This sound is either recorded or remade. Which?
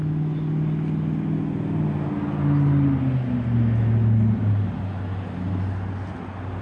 recorded